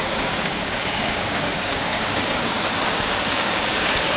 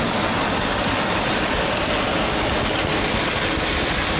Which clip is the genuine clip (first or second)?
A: second